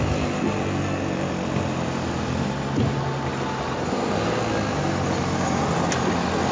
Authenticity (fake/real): real